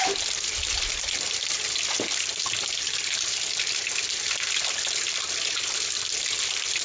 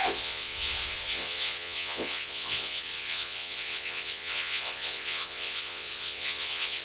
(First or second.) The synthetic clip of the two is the second